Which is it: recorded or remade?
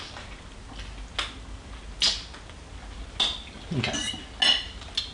recorded